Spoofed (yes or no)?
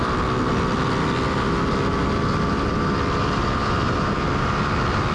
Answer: no